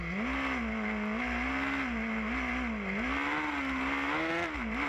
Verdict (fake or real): real